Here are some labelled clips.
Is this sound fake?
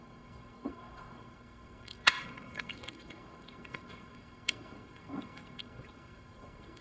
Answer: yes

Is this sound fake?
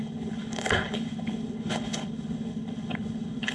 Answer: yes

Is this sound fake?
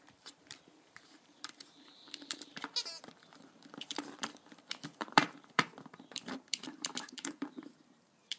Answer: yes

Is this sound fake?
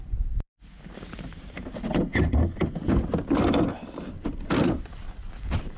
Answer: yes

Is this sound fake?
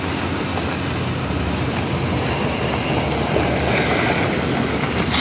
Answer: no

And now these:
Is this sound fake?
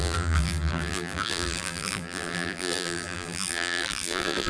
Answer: yes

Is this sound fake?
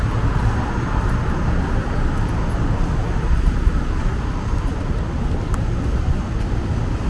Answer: no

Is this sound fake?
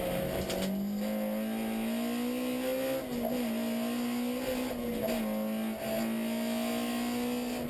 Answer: no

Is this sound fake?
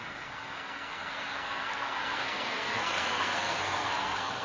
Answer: yes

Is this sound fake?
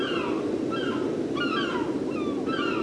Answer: no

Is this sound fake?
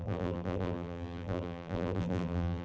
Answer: yes